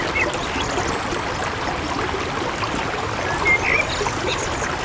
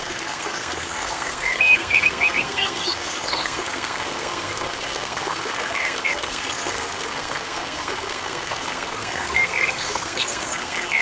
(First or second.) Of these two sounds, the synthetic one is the second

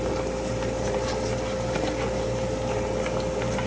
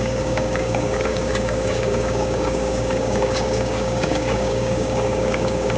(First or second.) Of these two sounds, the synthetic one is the second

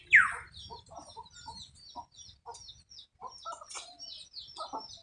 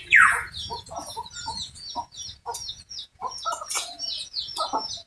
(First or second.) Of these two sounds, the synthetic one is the second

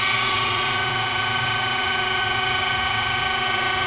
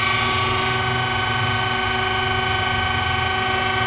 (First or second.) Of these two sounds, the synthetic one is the first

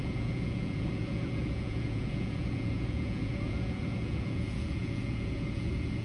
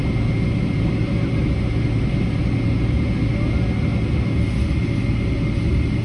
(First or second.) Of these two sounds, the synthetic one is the first